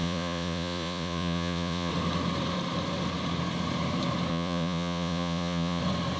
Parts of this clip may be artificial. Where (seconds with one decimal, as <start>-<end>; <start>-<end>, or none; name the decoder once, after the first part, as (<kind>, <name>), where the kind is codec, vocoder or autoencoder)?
0.0-1.9 (vocoder, Vocos); 4.3-5.8